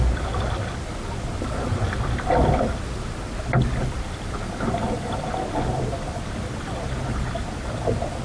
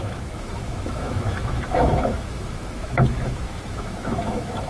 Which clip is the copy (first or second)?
second